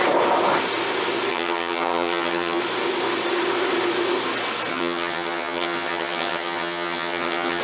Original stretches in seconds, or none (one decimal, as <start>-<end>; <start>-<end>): 0.0-1.3; 2.6-4.7